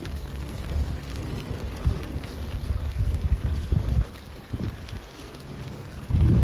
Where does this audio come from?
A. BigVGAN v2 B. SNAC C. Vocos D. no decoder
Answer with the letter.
B